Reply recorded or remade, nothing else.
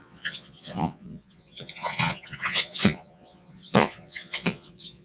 remade